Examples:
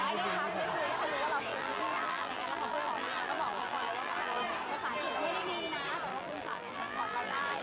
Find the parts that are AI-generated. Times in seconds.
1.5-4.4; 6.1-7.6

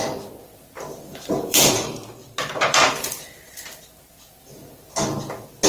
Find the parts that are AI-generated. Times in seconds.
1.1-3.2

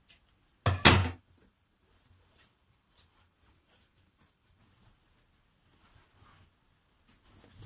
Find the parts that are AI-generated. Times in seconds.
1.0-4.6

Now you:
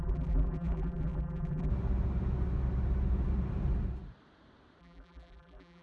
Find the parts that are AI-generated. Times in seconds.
0.0-1.7; 4.8-5.8

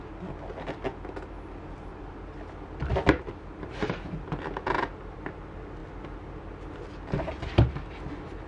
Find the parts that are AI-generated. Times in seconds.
2.8-4.4

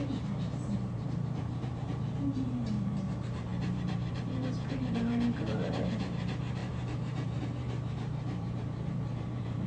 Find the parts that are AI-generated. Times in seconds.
0.0-9.7

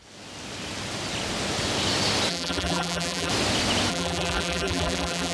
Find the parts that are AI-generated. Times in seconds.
2.3-3.3; 3.9-5.3

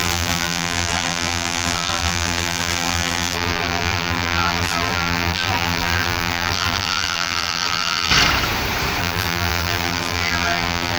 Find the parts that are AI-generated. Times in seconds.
0.0-8.1; 9.0-11.0